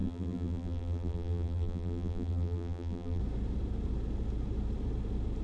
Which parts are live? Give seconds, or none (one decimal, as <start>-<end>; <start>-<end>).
3.2-5.4